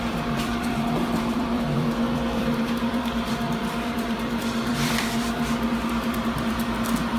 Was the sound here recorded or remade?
remade